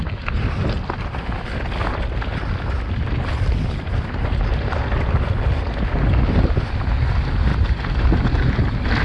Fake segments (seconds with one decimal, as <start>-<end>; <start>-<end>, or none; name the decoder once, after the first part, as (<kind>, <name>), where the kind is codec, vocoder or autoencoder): 4.5-5.0 (vocoder, BigVGAN v2); 7.5-8.3